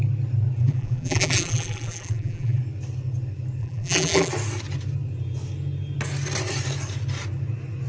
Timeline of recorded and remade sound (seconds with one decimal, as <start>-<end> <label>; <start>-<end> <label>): 0.0-0.6 recorded; 0.6-2.6 remade; 2.6-3.6 recorded; 3.6-4.3 remade; 4.3-7.9 recorded